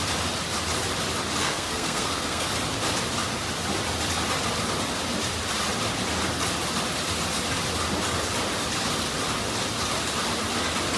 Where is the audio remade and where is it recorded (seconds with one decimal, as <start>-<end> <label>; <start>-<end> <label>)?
0.0-1.4 recorded; 1.4-2.5 remade; 2.5-11.0 recorded